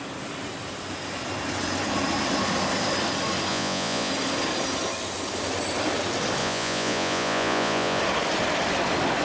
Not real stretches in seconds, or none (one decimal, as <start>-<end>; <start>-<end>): 3.5-4.1; 6.4-8.0